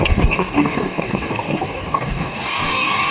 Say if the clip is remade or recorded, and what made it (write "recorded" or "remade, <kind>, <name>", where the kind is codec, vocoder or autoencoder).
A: remade, codec, DAC